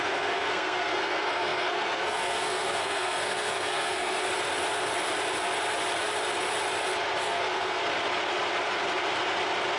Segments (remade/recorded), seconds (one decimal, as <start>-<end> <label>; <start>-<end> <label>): 0.0-4.2 remade; 4.2-7.2 recorded; 7.2-7.8 remade; 7.8-9.8 recorded